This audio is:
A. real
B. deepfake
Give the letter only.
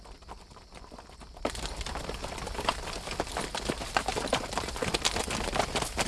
A